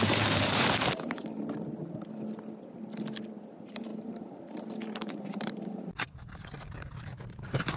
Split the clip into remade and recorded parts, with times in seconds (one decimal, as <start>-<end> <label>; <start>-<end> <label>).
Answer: 0.0-1.8 remade; 1.8-3.3 recorded; 3.3-7.8 remade